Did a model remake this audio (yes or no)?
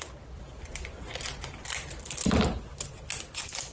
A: no